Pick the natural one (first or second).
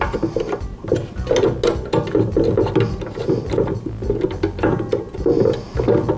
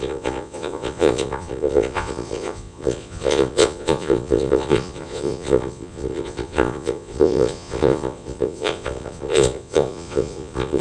first